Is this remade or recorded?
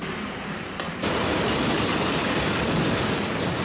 remade